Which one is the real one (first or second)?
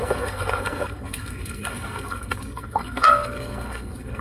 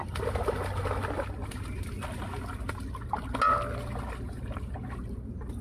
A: second